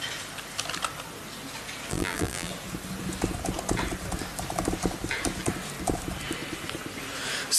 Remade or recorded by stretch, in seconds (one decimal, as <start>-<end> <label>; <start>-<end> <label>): 0.0-1.9 recorded; 1.9-2.5 remade; 2.5-7.6 recorded